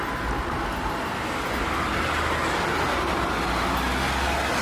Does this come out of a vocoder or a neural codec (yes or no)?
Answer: no